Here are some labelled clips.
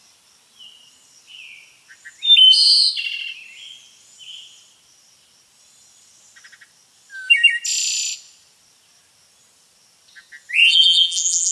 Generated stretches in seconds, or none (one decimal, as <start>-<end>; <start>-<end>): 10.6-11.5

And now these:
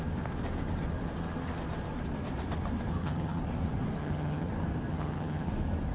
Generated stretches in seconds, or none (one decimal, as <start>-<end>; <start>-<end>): 2.9-3.4; 4.0-4.5; 4.9-5.5

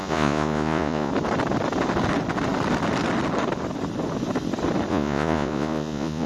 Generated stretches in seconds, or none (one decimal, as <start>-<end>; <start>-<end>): 0.0-1.1; 4.9-6.3